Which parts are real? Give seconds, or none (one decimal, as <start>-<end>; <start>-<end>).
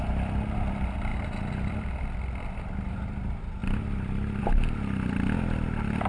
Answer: 0.0-3.6; 4.4-6.1